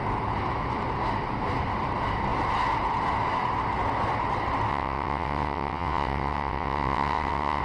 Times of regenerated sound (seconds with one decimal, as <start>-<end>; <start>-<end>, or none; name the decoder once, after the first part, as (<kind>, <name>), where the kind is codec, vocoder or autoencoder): 4.7-7.6 (vocoder, WaveNeXt)